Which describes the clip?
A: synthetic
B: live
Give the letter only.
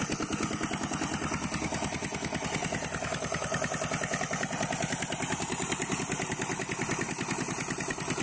B